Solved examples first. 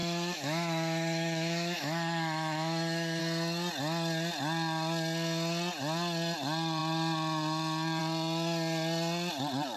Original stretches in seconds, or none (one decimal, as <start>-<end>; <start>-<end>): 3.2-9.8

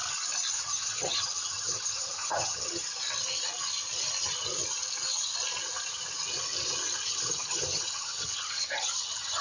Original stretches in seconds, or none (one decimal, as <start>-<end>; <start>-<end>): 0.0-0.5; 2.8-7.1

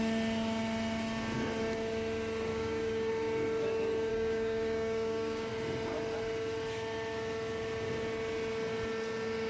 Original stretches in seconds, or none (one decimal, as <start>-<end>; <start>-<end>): 0.0-2.5; 3.1-4.1; 5.5-9.5

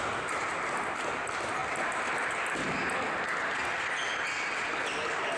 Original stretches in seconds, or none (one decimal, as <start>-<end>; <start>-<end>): 0.0-5.4